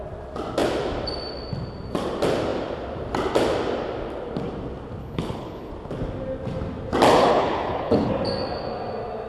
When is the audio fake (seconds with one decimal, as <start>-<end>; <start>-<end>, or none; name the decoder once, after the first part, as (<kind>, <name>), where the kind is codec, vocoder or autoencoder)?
5.0-5.7 (codec, HILCodec); 7.2-8.1